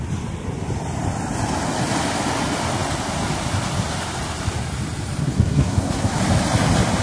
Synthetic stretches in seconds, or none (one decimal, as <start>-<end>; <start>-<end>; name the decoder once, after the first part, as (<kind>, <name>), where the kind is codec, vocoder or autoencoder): 5.2-6.2 (codec, SNAC)